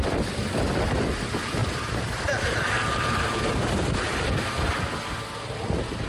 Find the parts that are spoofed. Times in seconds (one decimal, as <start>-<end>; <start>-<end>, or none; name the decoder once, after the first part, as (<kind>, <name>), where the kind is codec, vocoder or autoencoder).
1.6-4.8 (vocoder, BigVGAN v2)